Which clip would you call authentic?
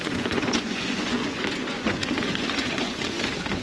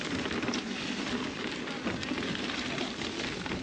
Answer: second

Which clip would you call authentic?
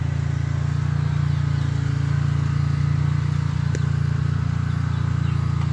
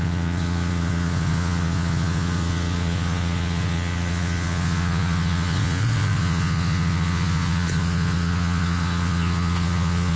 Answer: first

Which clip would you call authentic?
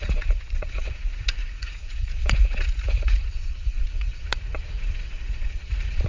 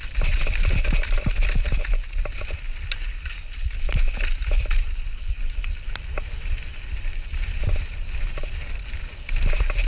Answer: second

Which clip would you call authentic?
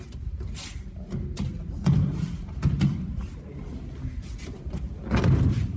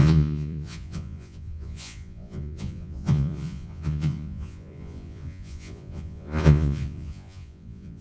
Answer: first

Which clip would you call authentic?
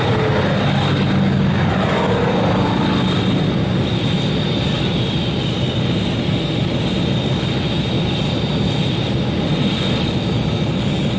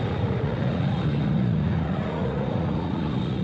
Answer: first